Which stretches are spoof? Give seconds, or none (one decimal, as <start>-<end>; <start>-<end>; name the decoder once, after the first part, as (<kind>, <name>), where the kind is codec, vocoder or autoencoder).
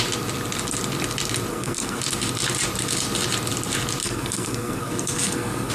1.5-2.0 (codec, SNAC); 4.0-5.7